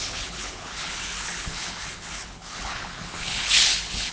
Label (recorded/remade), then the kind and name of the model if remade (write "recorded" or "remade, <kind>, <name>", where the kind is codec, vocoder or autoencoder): remade, codec, HILCodec